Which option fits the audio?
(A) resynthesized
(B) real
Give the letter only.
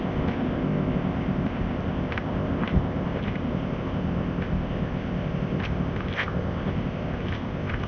A